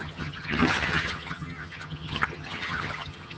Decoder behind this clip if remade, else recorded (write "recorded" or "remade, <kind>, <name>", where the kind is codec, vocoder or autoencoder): remade, vocoder, HiFi-GAN